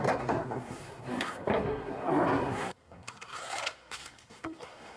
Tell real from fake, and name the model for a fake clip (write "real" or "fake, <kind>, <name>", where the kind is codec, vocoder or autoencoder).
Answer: fake, codec, SNAC